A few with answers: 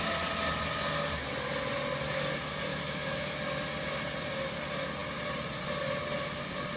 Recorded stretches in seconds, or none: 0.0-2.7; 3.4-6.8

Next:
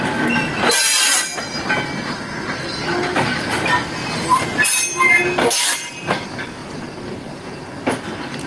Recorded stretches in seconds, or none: 0.0-8.5

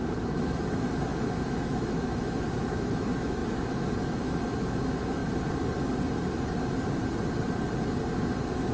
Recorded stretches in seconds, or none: 5.2-8.7

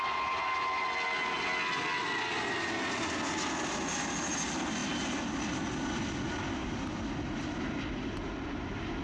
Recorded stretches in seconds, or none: 0.0-9.0

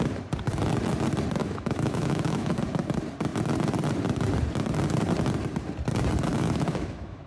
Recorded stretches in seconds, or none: 0.0-1.4; 2.6-6.3

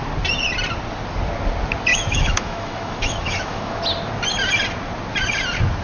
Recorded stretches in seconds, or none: 0.0-1.9; 3.8-5.8